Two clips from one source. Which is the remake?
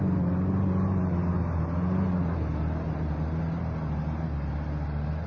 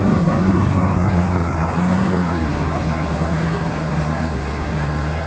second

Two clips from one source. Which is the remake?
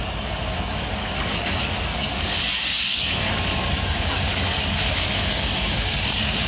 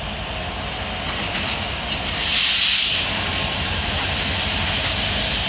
first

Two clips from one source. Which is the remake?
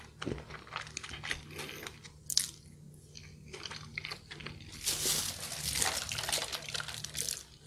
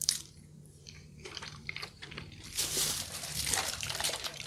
second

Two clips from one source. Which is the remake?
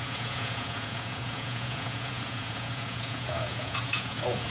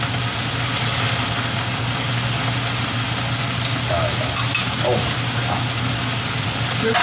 first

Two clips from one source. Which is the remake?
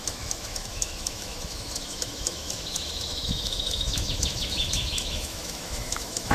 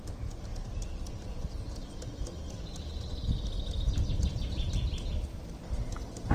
first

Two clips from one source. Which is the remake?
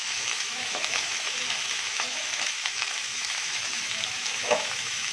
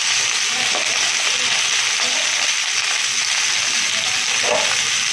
first